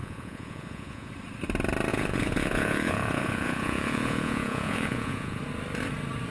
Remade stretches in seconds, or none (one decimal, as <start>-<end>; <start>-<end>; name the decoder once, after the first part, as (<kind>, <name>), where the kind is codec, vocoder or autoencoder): 0.0-1.1 (vocoder, Vocos); 1.9-5.4